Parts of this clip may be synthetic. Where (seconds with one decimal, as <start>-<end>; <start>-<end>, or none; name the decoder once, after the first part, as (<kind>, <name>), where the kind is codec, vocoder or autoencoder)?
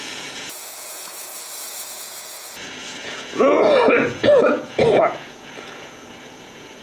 0.0-6.8 (vocoder, Vocos)